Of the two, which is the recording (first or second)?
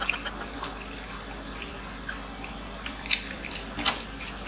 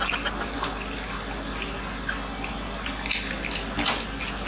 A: second